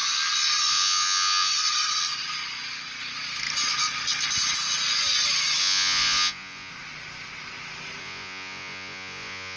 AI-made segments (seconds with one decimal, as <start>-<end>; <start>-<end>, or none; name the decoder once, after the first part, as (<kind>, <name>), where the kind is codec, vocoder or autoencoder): 0.7-1.5 (vocoder, Vocos); 5.6-6.7; 8.0-9.6